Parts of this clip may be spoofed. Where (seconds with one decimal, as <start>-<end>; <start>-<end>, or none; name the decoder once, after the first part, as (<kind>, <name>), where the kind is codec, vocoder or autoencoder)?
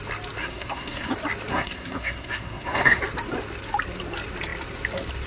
0.4-1.1 (codec, SNAC); 1.5-3.0